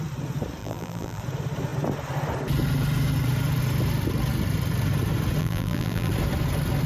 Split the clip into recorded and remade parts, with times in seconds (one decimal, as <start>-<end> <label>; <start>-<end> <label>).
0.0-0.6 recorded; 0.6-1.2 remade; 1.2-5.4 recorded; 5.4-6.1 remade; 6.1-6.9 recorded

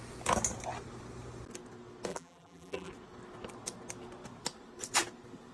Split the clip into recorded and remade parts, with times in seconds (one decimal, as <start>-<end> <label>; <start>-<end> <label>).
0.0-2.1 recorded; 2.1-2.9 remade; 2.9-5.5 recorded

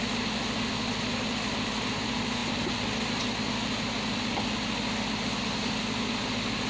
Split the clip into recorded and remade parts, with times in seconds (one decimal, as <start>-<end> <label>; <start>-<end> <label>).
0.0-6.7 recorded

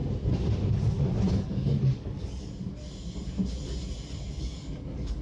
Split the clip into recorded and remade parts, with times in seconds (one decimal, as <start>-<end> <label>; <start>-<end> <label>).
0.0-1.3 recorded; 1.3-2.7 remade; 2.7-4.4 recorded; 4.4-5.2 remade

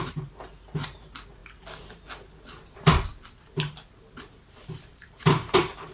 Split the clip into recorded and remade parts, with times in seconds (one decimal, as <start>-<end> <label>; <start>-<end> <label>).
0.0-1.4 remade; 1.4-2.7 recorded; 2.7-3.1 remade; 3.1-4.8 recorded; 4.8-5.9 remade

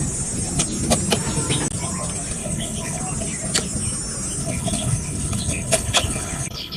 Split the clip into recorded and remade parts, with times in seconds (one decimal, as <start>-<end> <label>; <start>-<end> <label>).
0.0-2.4 recorded; 2.4-3.0 remade; 3.0-4.4 recorded; 4.4-6.8 remade